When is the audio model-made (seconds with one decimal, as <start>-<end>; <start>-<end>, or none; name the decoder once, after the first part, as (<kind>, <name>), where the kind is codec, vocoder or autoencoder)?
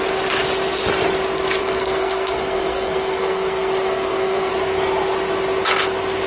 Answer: 1.6-4.5 (codec, SNAC)